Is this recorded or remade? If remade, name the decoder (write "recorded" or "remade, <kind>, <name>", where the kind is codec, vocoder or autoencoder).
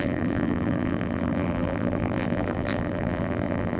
remade, vocoder, BigVGAN v2